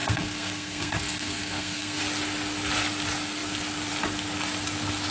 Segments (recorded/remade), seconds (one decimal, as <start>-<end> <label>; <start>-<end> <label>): 0.0-2.0 remade; 2.0-5.1 recorded